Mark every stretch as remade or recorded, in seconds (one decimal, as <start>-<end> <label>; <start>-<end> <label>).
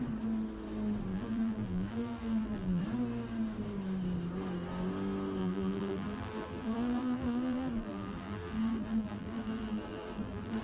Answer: 0.0-1.1 recorded; 1.1-2.8 remade; 2.8-5.4 recorded; 5.4-10.6 remade